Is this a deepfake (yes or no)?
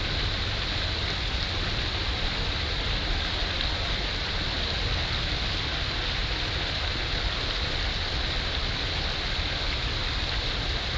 no